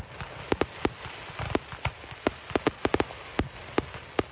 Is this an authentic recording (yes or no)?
yes